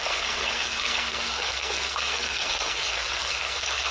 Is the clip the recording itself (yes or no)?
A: no